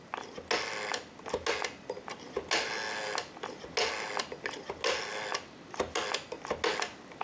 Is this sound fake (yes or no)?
no